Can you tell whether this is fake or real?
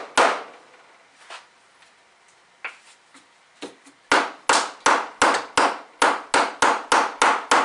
real